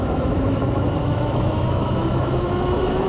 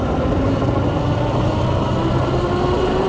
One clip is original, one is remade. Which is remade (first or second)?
first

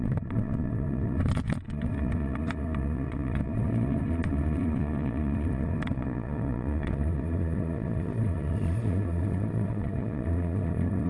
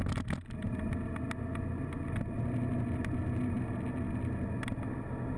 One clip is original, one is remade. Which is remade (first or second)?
first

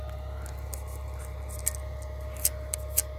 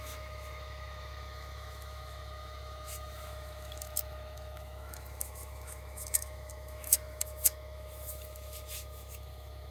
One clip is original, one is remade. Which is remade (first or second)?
second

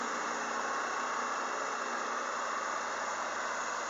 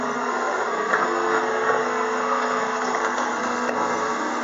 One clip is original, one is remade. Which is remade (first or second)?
second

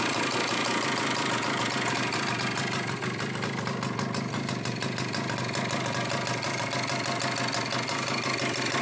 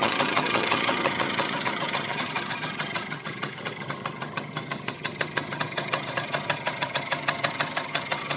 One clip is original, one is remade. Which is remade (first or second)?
second